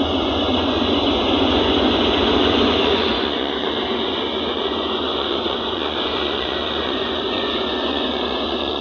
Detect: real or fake fake